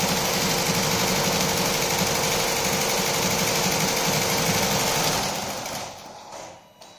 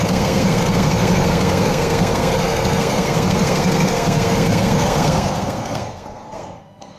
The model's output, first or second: second